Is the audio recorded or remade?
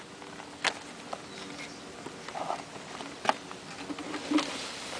recorded